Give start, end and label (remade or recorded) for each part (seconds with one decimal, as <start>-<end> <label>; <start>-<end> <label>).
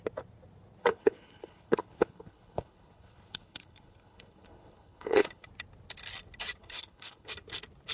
0.0-0.8 recorded; 0.8-5.5 remade; 5.5-6.6 recorded; 6.6-7.3 remade; 7.3-7.9 recorded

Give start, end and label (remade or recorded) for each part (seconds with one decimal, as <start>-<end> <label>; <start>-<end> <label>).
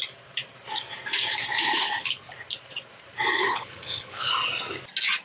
0.0-1.7 recorded; 1.7-2.3 remade; 2.3-3.4 recorded; 3.4-4.3 remade; 4.3-5.2 recorded